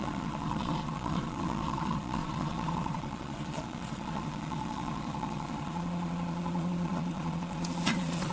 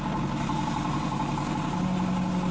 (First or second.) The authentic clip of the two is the second